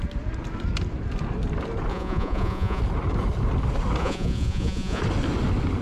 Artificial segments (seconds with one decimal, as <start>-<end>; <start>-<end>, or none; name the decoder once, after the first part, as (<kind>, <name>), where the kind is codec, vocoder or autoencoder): 1.9-2.8 (vocoder, Vocos); 4.0-5.0